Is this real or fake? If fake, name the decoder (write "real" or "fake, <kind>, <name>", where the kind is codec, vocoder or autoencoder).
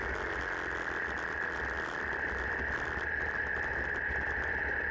real